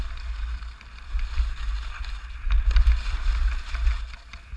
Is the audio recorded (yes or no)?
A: yes